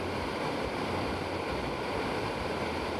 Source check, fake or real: real